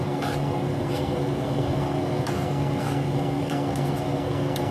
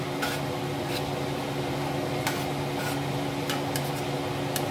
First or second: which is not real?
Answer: first